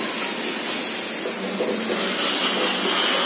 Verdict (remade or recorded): recorded